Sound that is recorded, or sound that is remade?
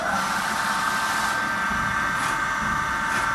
recorded